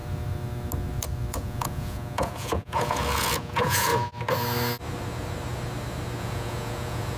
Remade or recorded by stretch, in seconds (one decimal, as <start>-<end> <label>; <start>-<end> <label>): 0.0-1.3 recorded; 1.3-3.9 remade; 3.9-6.2 recorded; 6.2-7.2 remade